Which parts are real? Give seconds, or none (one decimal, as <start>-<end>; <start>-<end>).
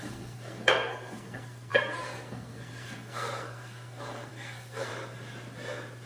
4.9-6.1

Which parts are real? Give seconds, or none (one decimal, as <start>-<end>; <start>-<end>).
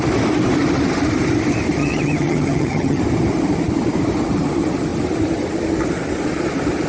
0.0-1.8; 3.0-6.9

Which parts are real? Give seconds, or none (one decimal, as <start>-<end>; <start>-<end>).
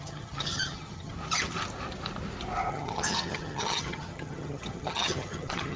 1.1-2.7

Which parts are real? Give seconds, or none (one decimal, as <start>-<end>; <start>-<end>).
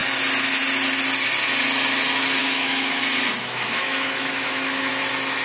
0.0-2.4; 3.0-3.4; 4.9-5.4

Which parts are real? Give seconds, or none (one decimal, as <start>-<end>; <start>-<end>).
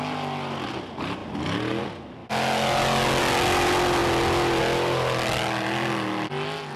0.0-6.8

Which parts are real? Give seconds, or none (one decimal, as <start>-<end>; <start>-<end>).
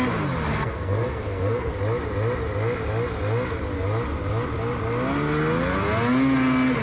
0.0-0.5; 1.7-6.8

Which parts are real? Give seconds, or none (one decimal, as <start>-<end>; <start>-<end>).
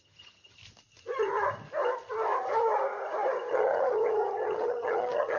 0.6-3.5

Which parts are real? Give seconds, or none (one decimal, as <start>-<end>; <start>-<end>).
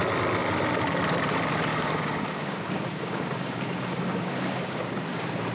0.0-1.7; 5.0-5.5